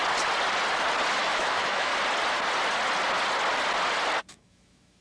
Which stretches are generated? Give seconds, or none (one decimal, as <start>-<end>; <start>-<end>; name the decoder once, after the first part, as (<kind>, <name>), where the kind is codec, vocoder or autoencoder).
1.2-1.9 (autoencoder, DAC-VAE); 4.3-5.0